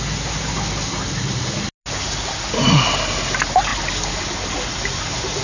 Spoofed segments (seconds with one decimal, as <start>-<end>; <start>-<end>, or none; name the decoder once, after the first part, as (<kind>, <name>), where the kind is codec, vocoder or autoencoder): none